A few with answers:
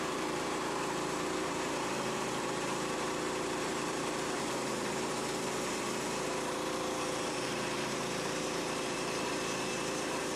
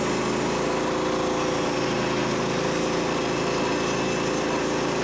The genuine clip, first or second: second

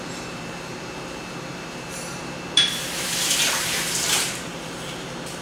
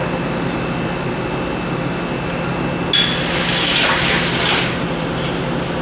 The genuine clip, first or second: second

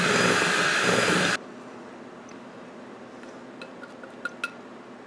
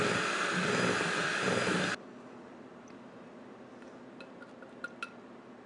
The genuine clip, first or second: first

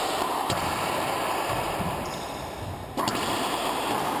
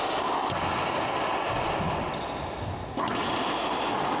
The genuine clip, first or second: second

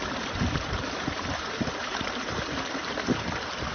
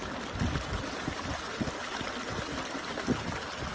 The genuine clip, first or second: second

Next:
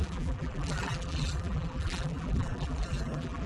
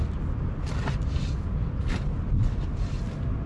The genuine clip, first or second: second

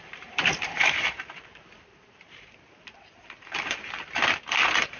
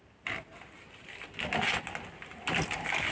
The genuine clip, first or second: second